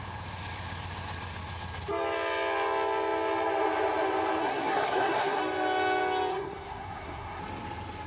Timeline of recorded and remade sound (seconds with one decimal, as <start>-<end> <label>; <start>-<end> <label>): 0.0-4.4 recorded; 4.4-5.4 remade; 5.4-6.3 recorded; 6.3-7.4 remade; 7.4-8.1 recorded